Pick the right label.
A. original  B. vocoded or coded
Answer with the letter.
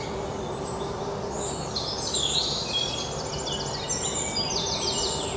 A